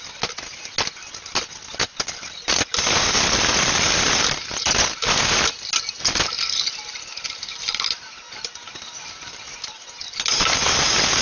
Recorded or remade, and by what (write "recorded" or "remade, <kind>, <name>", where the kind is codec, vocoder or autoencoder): recorded